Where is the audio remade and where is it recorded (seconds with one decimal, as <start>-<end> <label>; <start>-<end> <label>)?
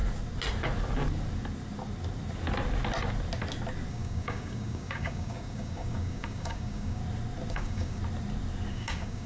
0.0-3.9 recorded; 3.9-7.0 remade; 7.0-7.5 recorded; 7.5-8.0 remade; 8.0-8.7 recorded; 8.7-9.3 remade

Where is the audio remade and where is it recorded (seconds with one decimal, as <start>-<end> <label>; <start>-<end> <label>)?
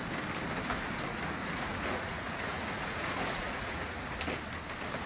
0.0-1.1 recorded; 1.1-4.2 remade; 4.2-5.1 recorded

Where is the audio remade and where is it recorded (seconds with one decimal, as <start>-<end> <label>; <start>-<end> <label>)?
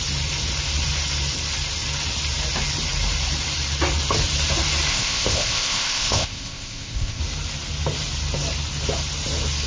0.0-4.9 recorded; 4.9-7.2 remade; 7.2-9.7 recorded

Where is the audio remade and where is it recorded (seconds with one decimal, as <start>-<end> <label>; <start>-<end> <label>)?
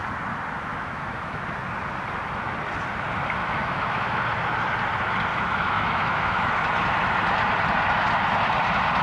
0.0-0.7 recorded; 0.7-1.4 remade; 1.4-3.4 recorded; 3.4-4.2 remade; 4.2-5.3 recorded; 5.3-6.5 remade; 6.5-9.0 recorded